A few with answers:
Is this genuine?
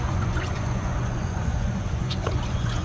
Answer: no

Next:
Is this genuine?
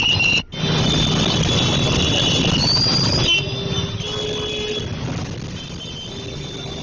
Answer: yes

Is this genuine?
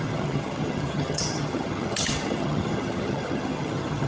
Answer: no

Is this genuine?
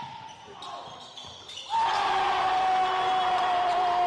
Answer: no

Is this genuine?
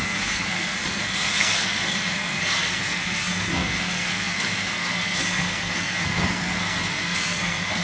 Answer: no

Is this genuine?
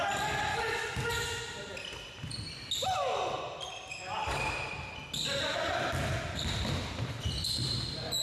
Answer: yes